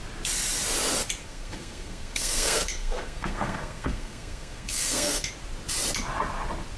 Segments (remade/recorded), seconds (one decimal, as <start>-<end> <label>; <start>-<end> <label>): 0.0-1.2 recorded; 1.2-5.3 remade; 5.3-6.8 recorded